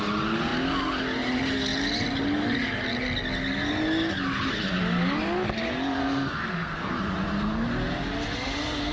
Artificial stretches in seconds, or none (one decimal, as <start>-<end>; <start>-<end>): 6.0-6.9